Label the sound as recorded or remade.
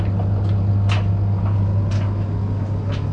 recorded